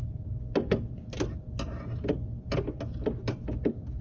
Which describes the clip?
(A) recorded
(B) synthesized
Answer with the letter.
A